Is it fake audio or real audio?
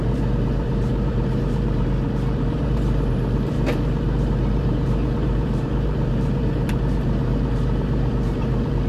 fake